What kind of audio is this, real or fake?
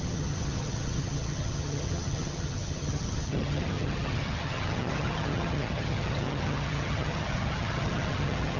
fake